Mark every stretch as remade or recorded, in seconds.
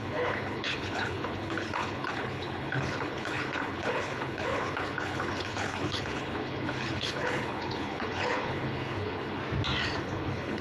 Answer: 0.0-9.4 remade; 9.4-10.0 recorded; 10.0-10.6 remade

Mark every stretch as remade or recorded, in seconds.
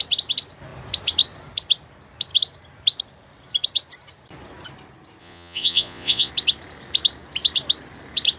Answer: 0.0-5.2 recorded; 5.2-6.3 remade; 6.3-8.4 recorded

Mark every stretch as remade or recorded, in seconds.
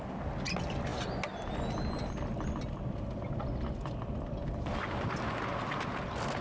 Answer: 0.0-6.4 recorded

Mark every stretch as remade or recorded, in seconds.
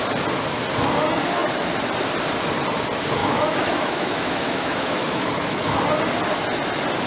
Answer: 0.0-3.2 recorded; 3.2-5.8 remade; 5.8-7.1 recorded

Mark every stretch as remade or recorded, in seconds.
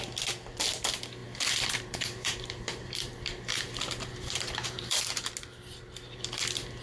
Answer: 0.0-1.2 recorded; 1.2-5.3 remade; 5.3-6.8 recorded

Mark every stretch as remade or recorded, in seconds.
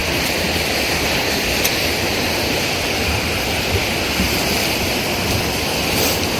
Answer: 0.0-2.4 remade; 2.4-6.4 recorded